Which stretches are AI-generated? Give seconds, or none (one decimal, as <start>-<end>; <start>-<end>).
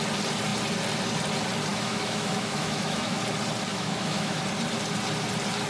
1.7-3.2; 3.7-4.4